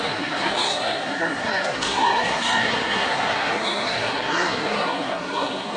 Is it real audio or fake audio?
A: fake